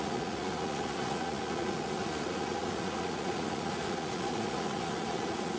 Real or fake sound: fake